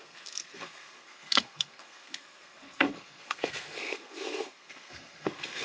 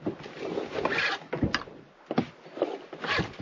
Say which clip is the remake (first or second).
first